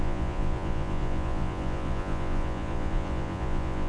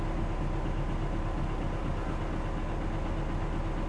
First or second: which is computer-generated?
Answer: first